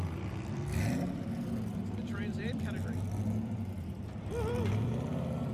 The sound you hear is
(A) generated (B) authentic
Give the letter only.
A